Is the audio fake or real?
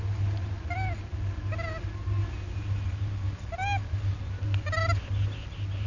real